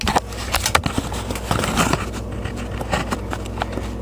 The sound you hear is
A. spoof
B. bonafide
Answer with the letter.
B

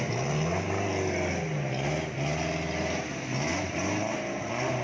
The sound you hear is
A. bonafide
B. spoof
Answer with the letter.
A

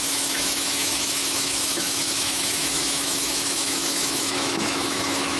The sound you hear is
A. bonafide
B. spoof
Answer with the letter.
B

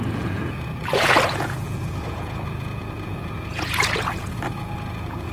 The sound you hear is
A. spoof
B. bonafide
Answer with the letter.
A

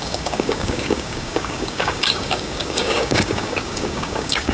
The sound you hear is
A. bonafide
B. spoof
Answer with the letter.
B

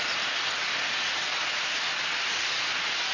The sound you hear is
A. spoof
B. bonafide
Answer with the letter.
B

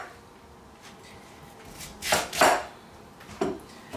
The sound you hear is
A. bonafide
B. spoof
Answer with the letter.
A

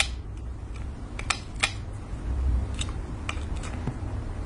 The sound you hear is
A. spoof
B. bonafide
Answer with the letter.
B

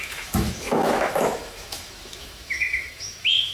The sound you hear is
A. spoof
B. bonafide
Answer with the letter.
A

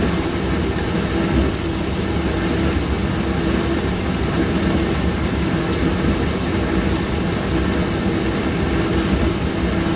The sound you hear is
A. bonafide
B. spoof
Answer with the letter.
A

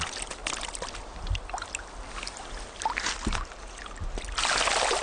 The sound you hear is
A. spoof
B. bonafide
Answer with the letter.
B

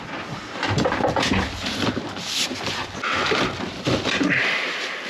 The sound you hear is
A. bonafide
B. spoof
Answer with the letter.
A